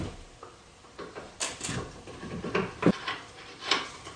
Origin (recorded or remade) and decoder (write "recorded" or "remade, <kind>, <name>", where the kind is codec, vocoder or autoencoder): remade, vocoder, BigVGAN v2